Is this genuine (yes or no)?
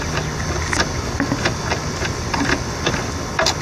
yes